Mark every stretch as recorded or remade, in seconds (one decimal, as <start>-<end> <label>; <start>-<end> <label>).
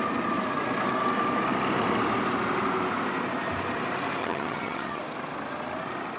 0.0-4.2 recorded; 4.2-5.0 remade; 5.0-6.2 recorded